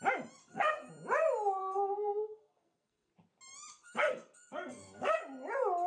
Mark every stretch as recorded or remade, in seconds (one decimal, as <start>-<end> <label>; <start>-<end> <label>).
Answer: 0.0-0.4 recorded; 0.4-0.9 remade; 0.9-1.6 recorded; 1.6-3.1 remade; 3.1-3.7 recorded; 3.7-5.2 remade; 5.2-5.9 recorded